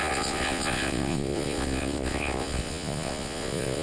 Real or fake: fake